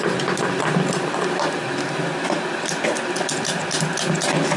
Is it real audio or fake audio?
real